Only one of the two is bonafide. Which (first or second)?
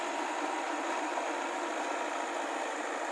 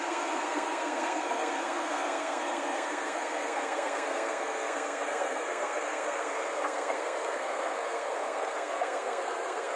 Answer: first